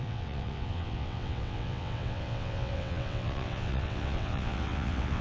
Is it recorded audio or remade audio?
remade